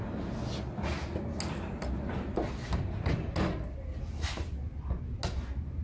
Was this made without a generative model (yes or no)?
yes